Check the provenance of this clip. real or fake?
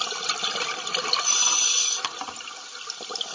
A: real